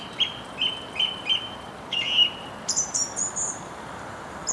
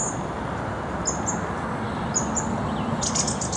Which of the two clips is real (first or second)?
second